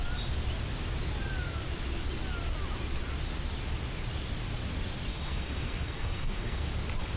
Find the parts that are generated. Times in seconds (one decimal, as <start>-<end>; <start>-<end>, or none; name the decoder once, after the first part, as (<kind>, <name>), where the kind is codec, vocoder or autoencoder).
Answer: 5.1-6.7 (codec, SNAC)